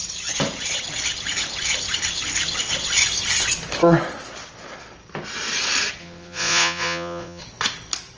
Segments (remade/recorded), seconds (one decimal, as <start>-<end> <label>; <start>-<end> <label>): 0.0-6.0 recorded; 6.0-7.4 remade; 7.4-8.2 recorded